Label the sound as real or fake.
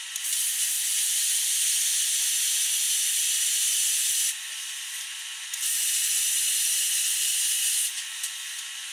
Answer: real